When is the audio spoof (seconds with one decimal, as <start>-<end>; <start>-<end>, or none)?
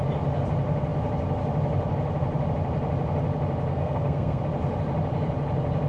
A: 3.7-4.4